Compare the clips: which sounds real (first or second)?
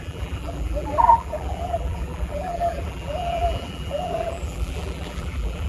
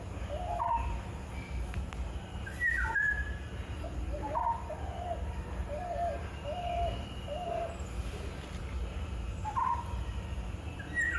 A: second